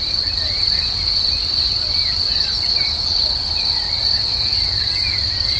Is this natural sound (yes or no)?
yes